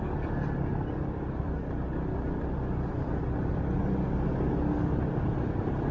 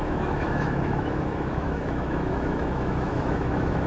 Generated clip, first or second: second